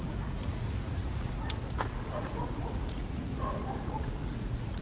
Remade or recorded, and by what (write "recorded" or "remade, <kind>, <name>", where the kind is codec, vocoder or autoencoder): remade, vocoder, Vocos